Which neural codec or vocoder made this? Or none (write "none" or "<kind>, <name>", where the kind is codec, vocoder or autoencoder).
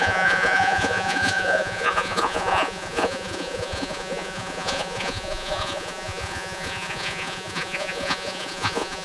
vocoder, Vocos